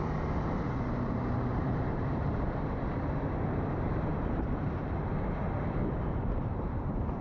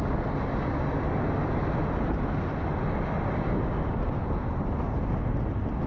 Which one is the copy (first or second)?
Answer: first